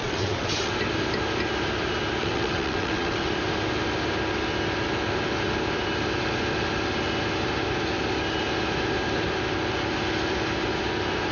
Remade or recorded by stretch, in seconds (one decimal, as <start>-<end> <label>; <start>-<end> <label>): 0.0-0.7 remade; 0.7-2.2 recorded; 2.2-3.3 remade; 3.3-11.3 recorded